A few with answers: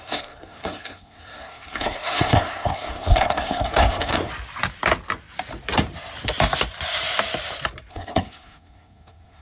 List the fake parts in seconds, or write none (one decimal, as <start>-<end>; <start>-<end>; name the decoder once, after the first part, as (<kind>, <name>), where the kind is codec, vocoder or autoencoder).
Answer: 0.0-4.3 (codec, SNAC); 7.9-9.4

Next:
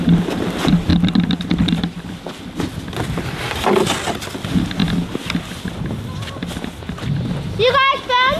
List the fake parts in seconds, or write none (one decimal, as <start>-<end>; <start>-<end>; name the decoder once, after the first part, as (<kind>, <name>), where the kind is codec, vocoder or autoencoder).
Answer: none

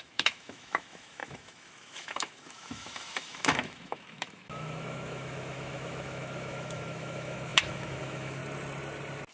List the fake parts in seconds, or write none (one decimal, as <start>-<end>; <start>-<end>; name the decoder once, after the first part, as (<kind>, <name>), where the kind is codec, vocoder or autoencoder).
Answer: 0.0-8.4 (autoencoder, DAC-VAE)

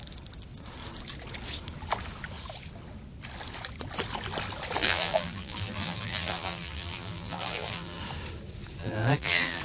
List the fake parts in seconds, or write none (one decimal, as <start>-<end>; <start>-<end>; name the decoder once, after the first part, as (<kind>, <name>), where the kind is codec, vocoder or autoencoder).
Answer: 4.8-8.0 (vocoder, BigVGAN v2); 8.8-9.6

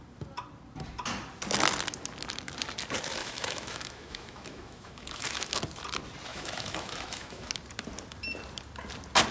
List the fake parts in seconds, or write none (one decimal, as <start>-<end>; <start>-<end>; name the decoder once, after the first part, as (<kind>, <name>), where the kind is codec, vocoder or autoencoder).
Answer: 3.2-5.6 (autoencoder, DAC-VAE); 6.3-7.5

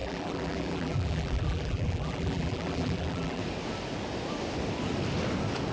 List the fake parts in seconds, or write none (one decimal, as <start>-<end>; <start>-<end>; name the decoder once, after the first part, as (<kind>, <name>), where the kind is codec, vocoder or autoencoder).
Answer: 0.0-3.4 (vocoder, BigVGAN v2)